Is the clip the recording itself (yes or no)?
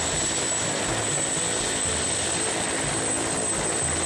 yes